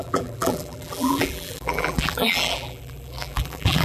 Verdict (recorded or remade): remade